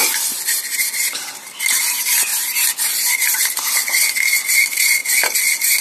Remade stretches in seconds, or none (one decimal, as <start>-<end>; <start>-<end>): none